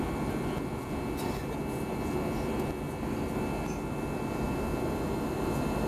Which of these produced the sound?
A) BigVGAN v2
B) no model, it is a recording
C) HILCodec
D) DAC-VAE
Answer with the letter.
B